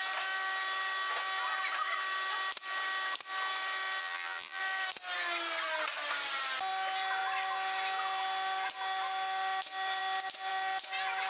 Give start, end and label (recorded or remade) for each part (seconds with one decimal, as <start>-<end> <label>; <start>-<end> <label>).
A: 0.0-4.0 recorded; 4.0-4.6 remade; 4.6-11.3 recorded